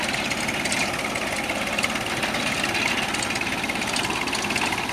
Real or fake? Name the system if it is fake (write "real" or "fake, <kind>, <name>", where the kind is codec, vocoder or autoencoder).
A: real